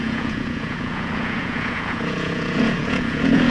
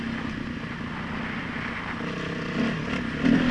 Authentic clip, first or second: second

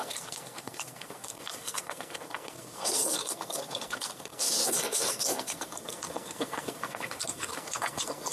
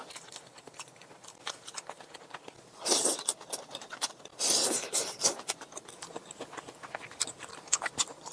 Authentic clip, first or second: second